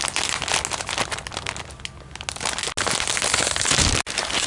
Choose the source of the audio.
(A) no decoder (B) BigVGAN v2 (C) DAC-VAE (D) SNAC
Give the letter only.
A